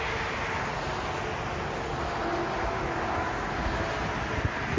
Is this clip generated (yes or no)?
no